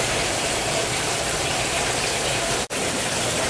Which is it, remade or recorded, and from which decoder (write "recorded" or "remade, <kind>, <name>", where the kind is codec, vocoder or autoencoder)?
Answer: remade, vocoder, BigVGAN v2